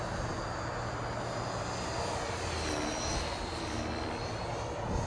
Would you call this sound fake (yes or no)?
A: no